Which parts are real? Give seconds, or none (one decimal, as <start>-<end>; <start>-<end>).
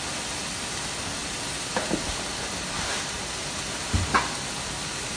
0.0-5.2